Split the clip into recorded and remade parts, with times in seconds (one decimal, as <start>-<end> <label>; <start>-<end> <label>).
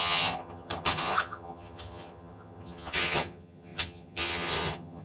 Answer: 0.0-5.0 remade